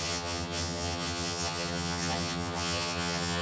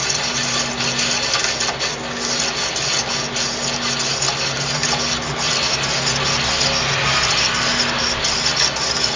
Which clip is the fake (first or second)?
first